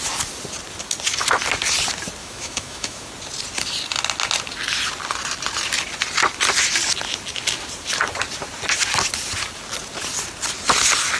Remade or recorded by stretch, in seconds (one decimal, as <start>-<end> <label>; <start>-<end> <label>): 0.0-2.2 recorded; 2.2-3.1 remade; 3.1-11.2 recorded